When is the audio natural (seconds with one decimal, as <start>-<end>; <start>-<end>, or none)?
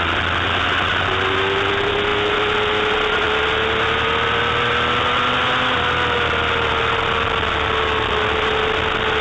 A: 0.0-9.2